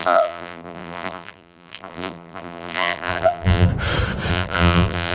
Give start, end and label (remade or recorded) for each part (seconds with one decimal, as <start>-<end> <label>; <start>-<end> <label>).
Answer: 0.0-3.7 remade; 3.7-4.3 recorded; 4.3-5.1 remade